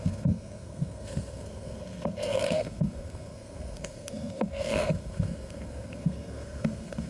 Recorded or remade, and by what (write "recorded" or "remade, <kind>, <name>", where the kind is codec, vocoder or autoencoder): remade, codec, SNAC